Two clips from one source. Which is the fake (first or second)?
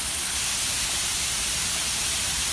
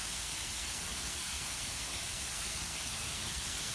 second